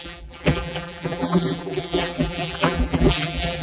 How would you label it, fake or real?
fake